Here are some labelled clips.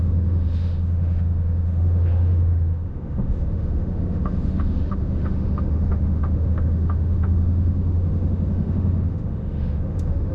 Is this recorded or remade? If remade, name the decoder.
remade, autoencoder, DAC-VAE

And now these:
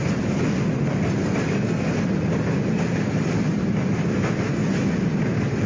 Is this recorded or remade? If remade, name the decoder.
recorded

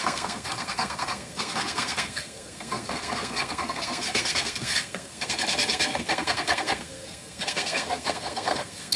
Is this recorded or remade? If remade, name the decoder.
remade, codec, SNAC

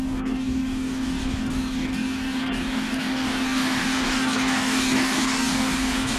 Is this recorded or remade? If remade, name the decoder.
remade, codec, DAC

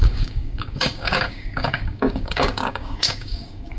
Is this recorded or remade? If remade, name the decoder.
remade, codec, DAC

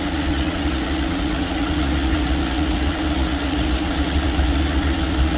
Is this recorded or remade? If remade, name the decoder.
remade, vocoder, Vocos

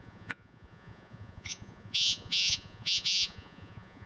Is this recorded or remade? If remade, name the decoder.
remade, vocoder, Vocos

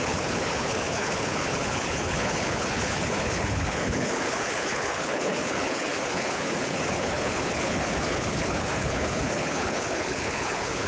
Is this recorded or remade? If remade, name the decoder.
remade, codec, HILCodec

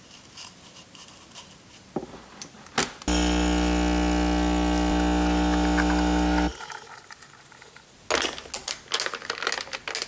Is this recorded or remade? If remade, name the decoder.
recorded